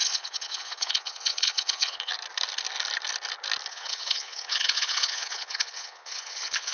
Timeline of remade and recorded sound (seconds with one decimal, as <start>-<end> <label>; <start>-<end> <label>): 0.0-2.1 remade; 2.1-3.7 recorded; 3.7-6.7 remade